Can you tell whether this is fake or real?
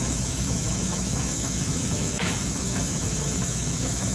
fake